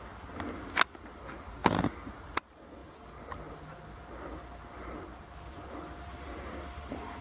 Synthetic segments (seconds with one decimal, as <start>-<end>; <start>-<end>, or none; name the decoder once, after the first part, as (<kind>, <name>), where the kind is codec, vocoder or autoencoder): none